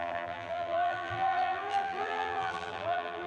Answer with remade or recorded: remade